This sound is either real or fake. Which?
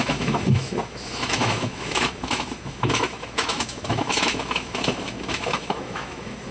fake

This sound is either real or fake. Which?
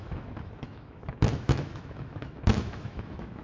fake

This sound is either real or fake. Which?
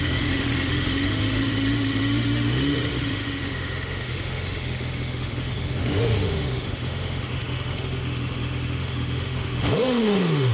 fake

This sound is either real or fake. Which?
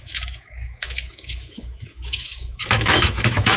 fake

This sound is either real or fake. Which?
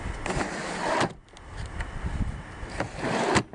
real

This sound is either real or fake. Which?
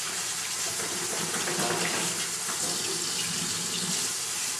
real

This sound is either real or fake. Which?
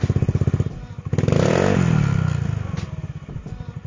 real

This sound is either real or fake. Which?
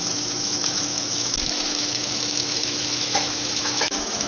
fake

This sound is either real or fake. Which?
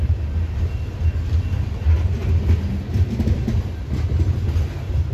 real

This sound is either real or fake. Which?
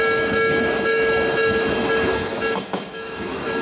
fake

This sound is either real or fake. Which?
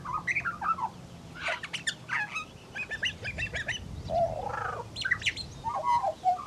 real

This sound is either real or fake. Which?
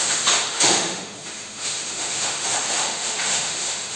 fake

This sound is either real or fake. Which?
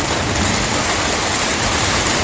real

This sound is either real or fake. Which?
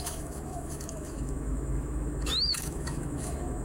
fake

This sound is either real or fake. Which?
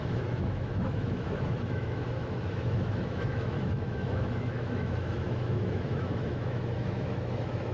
fake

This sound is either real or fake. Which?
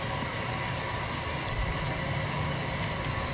real